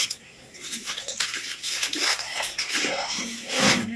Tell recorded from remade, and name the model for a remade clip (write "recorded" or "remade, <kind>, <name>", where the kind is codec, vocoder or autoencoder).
remade, codec, SNAC